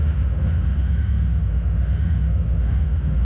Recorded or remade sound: remade